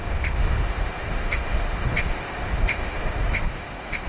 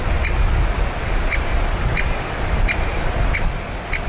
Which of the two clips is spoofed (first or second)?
first